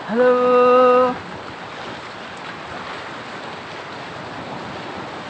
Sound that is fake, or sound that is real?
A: real